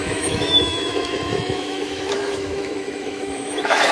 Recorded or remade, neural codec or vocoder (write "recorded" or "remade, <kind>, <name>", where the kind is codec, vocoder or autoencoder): remade, autoencoder, DAC-VAE